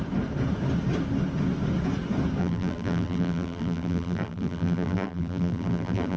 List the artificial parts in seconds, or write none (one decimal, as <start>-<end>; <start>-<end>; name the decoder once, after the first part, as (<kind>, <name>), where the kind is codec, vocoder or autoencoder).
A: 2.4-6.2 (vocoder, BigVGAN v2)